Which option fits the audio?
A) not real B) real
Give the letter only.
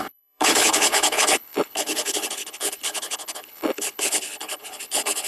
A